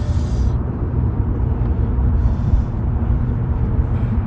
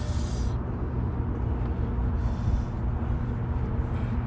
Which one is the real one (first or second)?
second